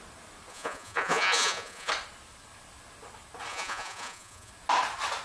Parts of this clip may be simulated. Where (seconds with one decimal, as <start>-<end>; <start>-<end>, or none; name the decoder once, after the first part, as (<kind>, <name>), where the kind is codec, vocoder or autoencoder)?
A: 0.5-1.9 (vocoder, Vocos); 3.5-4.5